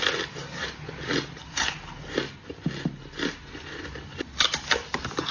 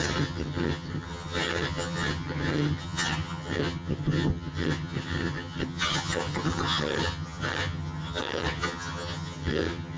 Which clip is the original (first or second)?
first